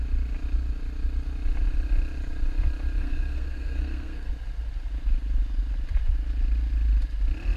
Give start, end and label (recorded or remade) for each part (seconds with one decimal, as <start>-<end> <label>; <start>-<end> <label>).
0.0-3.0 recorded; 3.0-4.3 remade; 4.3-7.6 recorded